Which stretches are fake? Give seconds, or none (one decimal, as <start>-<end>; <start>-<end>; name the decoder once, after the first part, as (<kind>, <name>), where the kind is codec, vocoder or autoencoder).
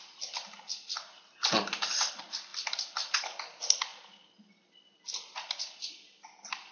none